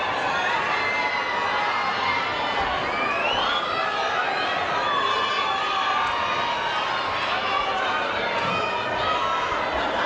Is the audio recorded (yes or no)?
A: yes